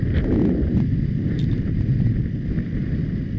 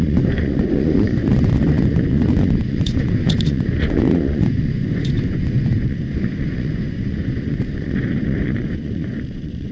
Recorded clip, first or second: first